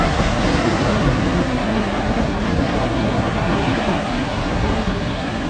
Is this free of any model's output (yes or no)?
no